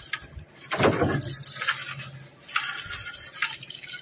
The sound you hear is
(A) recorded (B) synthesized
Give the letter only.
A